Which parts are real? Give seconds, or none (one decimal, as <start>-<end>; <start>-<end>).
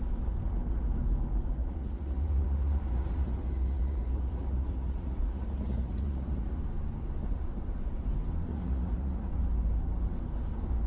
0.0-1.6; 6.6-8.5; 9.3-10.9